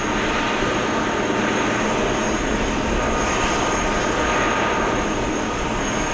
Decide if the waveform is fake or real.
real